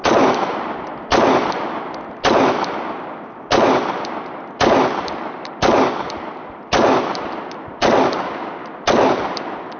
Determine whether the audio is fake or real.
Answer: real